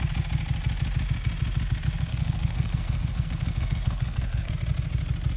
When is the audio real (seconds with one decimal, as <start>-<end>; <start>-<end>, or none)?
0.0-2.1; 4.5-5.4

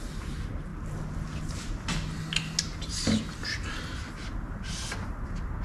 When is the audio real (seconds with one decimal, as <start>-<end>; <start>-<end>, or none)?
0.0-5.6

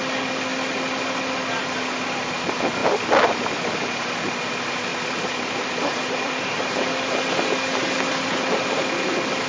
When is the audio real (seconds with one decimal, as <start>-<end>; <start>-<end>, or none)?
0.0-9.5